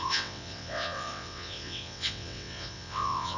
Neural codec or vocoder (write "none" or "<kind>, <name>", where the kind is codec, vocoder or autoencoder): vocoder, WaveNeXt